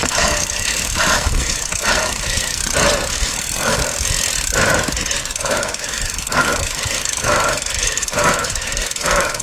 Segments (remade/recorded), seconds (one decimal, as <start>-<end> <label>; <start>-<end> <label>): 0.0-2.6 remade; 2.6-3.1 recorded; 3.1-3.8 remade; 3.8-5.2 recorded; 5.2-9.4 remade